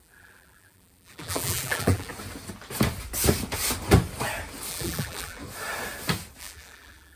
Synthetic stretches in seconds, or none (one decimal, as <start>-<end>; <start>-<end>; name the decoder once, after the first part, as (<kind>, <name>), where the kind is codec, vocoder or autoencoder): 0.0-2.1 (vocoder, BigVGAN v2); 4.7-5.4; 6.4-7.2